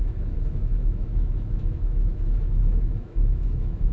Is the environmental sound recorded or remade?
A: remade